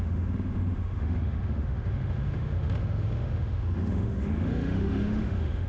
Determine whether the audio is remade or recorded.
remade